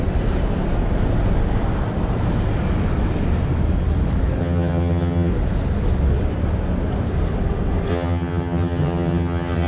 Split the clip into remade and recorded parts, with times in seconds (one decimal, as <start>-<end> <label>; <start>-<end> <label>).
0.0-4.4 recorded; 4.4-5.3 remade; 5.3-7.9 recorded; 7.9-9.7 remade